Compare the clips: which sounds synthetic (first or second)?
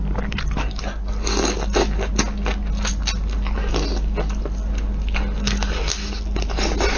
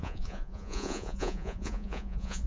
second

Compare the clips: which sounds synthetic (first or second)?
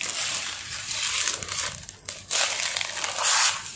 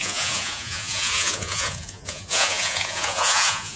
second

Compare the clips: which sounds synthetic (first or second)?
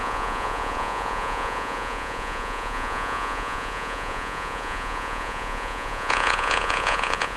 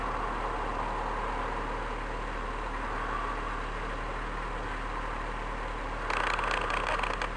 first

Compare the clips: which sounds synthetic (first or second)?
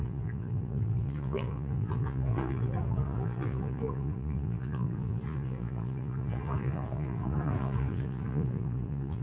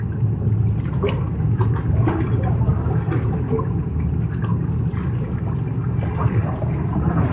first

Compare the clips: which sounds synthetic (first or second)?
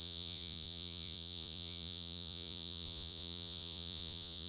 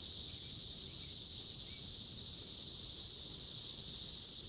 first